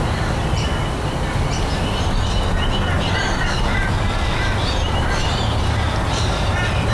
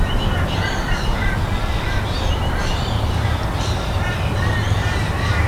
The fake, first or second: second